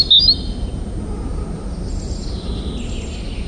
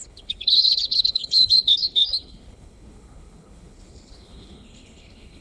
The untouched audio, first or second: first